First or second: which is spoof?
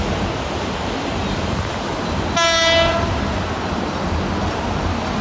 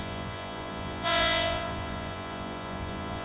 second